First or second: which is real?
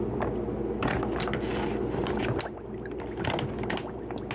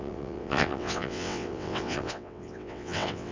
first